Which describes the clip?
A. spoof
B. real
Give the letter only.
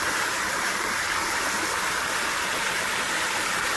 A